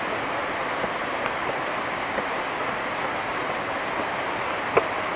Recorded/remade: recorded